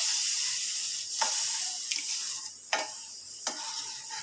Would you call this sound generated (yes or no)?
no